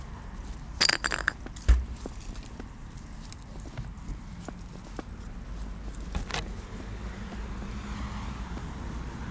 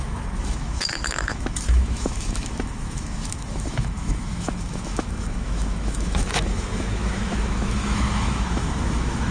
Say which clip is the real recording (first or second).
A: first